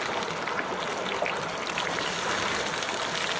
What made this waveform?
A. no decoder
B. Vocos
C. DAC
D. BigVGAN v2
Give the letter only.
A